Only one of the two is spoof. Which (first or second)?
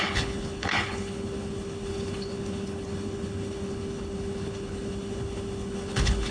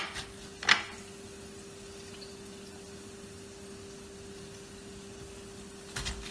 first